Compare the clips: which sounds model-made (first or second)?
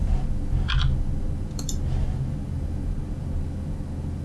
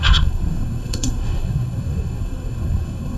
second